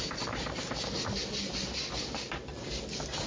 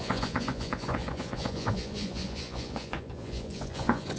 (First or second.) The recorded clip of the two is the first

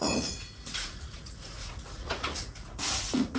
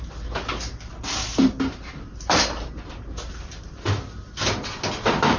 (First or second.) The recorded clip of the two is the second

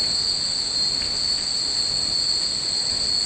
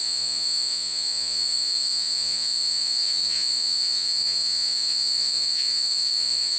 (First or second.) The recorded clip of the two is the first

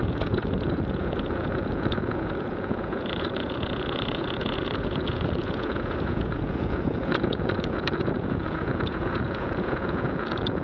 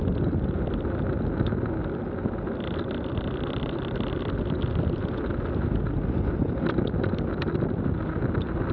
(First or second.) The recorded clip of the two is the second